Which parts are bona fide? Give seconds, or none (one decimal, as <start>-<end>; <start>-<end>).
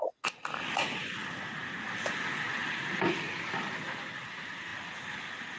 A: 0.0-5.6